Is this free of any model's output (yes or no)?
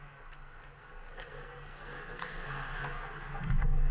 no